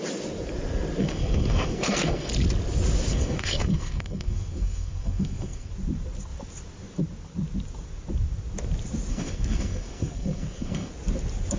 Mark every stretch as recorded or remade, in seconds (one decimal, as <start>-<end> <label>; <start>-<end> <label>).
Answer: 0.0-1.0 recorded; 1.0-2.3 remade; 2.3-3.1 recorded; 3.1-5.7 remade; 5.7-9.1 recorded; 9.1-10.9 remade; 10.9-11.6 recorded